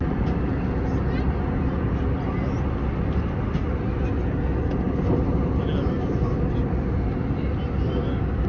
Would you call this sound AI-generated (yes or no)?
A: no